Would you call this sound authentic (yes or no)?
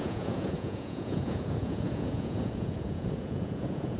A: no